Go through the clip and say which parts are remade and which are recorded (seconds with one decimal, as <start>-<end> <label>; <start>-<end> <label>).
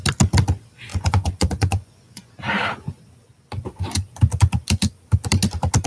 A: 0.0-0.9 recorded; 0.9-2.3 remade; 2.3-5.9 recorded